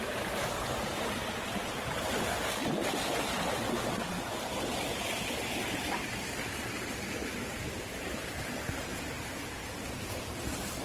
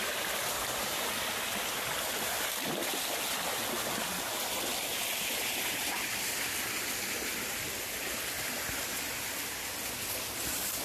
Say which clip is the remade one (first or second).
first